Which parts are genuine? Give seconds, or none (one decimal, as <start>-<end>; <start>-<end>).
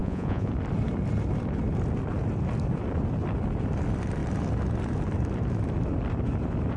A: 0.5-6.8